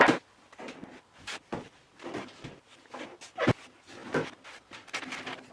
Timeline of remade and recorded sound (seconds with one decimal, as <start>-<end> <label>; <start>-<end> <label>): 0.0-5.5 recorded